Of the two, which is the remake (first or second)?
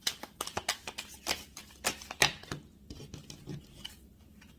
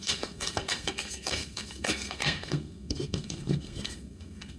second